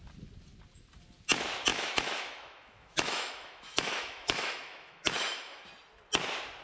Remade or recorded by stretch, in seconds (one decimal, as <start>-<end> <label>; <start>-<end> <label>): 0.0-1.7 recorded; 1.7-5.7 remade; 5.7-6.6 recorded